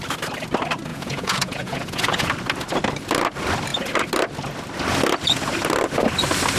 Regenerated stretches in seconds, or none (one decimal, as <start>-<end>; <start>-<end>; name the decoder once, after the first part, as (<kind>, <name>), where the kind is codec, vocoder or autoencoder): 0.9-2.3 (vocoder, Vocos)